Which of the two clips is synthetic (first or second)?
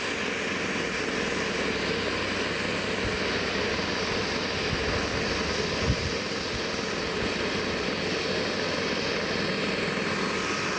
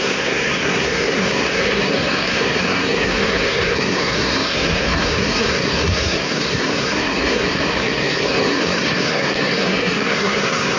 second